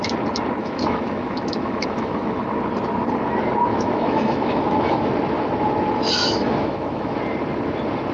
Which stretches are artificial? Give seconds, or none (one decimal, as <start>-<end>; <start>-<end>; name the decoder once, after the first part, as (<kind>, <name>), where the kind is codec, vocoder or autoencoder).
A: 0.6-2.4 (autoencoder, DAC-VAE); 3.7-5.1; 6.2-7.2